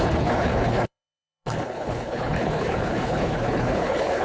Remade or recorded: remade